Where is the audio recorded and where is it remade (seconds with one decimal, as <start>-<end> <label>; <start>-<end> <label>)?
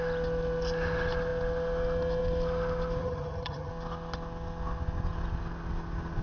0.0-3.0 recorded; 3.0-3.7 remade; 3.7-6.2 recorded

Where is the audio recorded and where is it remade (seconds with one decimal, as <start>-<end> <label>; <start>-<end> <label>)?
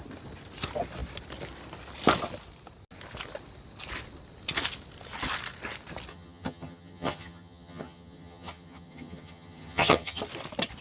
0.0-6.1 recorded; 6.1-10.2 remade; 10.2-10.8 recorded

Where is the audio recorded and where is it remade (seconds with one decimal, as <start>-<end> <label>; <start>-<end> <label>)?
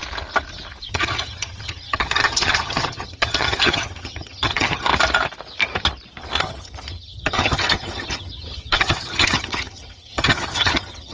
0.0-0.9 recorded; 0.9-4.9 remade; 4.9-6.4 recorded; 6.4-11.1 remade